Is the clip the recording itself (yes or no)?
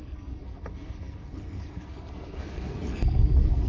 no